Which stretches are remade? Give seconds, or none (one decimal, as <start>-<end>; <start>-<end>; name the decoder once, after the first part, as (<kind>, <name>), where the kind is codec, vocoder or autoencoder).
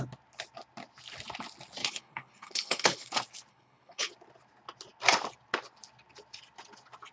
1.8-3.1 (codec, HILCodec); 3.5-4.1